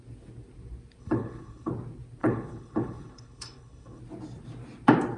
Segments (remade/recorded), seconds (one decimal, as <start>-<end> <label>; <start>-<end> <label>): 0.0-1.0 recorded; 1.0-1.7 remade; 1.7-2.2 recorded; 2.2-4.0 remade; 4.0-5.2 recorded